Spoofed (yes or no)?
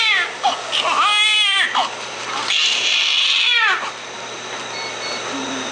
yes